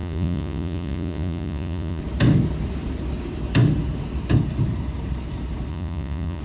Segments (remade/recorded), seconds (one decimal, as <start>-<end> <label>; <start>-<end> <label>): 0.0-2.0 remade; 2.0-5.7 recorded; 5.7-6.4 remade